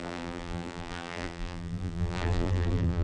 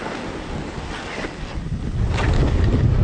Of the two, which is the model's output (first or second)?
first